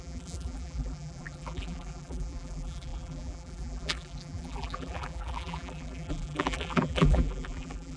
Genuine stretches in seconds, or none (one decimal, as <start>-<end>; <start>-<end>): none